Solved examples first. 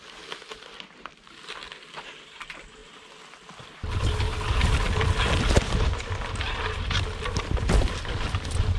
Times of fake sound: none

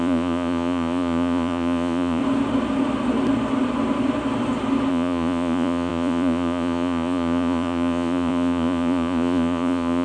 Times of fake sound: 0.0-2.2; 4.9-10.0

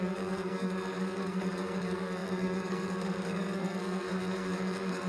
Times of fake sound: 0.0-5.1

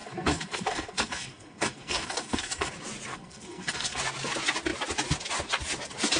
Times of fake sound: 0.0-2.7; 3.1-4.0

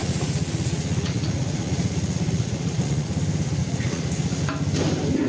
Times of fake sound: 0.0-3.2; 3.6-4.4

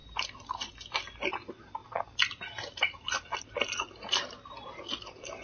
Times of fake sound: none

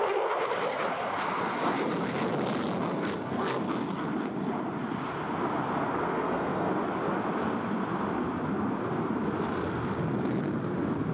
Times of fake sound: 2.9-3.7; 6.1-6.7

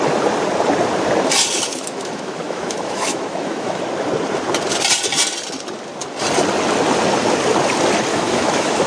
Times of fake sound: 1.7-3.8; 8.1-8.9